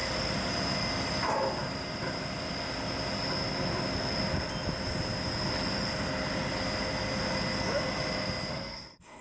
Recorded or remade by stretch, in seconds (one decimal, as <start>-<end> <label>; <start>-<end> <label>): 0.0-8.5 recorded; 8.5-9.2 remade